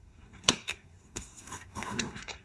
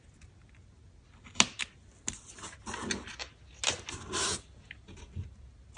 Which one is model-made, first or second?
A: first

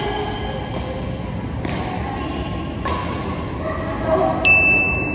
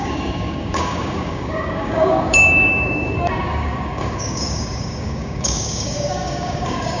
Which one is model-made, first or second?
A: second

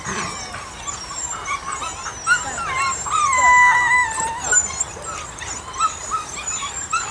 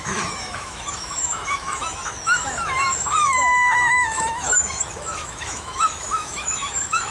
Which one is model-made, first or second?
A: second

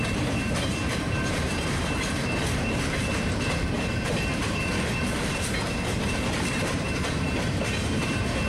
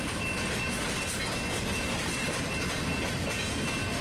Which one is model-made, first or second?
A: first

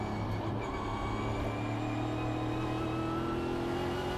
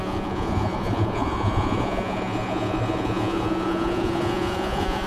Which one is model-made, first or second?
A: second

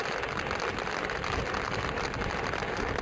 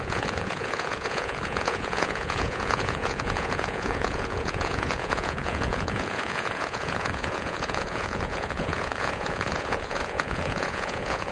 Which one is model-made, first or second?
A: second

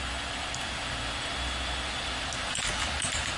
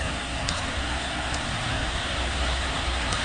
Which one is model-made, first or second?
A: second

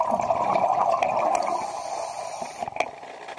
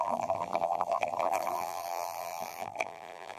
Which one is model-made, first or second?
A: second